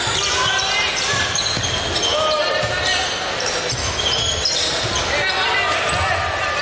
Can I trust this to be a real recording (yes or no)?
yes